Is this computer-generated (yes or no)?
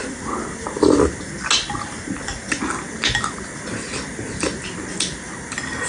no